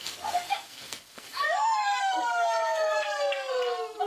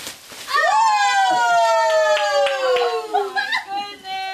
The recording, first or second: second